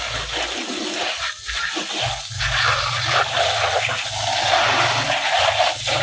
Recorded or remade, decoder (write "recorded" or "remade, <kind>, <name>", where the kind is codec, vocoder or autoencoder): recorded